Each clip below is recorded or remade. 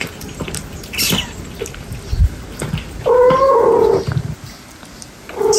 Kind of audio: recorded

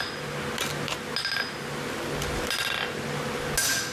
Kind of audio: recorded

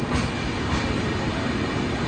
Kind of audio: recorded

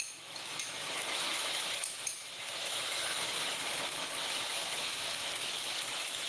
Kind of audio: remade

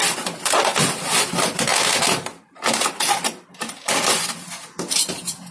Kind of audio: recorded